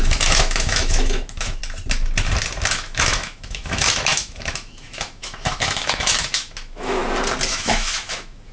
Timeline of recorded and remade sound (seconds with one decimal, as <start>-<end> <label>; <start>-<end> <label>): 0.0-1.6 remade; 1.6-2.7 recorded; 2.7-7.0 remade; 7.0-7.5 recorded; 7.5-8.5 remade